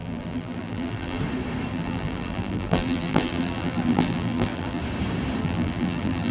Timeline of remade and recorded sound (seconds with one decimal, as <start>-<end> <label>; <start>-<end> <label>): 0.0-1.2 remade; 1.2-1.7 recorded; 1.7-4.8 remade; 4.8-5.4 recorded; 5.4-6.3 remade

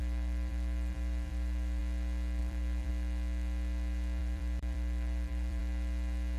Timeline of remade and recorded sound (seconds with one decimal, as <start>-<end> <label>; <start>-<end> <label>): 0.0-1.8 remade; 1.8-2.4 recorded; 2.4-2.9 remade; 2.9-4.2 recorded; 4.2-5.6 remade; 5.6-6.4 recorded

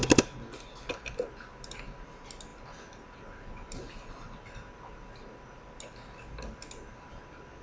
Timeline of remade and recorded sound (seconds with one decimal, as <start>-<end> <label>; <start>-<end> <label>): 0.0-7.6 recorded

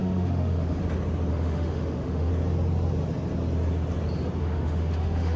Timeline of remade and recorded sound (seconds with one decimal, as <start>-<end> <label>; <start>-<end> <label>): 0.0-0.8 remade; 0.8-1.3 recorded; 1.3-2.3 remade; 2.3-4.4 recorded; 4.4-5.4 remade

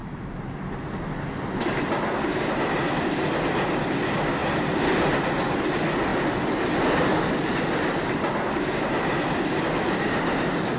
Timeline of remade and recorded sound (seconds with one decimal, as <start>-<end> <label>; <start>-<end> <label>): 0.0-10.8 recorded

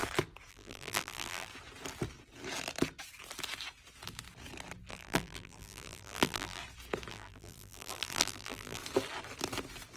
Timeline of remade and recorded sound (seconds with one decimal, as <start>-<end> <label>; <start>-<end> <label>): 0.0-0.5 recorded; 0.5-1.5 remade; 1.5-4.9 recorded; 4.9-6.6 remade; 6.6-7.1 recorded; 7.1-8.8 remade; 8.8-10.0 recorded

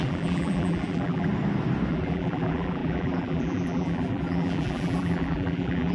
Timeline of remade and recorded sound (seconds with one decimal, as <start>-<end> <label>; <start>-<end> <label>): 0.0-1.3 remade; 1.3-1.9 recorded; 1.9-5.9 remade